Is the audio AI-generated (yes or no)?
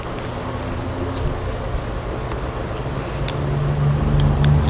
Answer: no